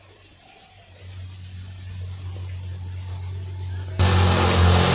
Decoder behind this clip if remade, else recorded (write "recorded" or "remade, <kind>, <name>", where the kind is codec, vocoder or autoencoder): recorded